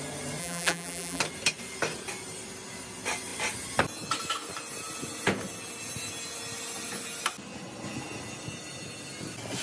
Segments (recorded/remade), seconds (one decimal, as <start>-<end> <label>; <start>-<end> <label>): 0.0-0.4 recorded; 0.4-1.2 remade; 1.2-9.6 recorded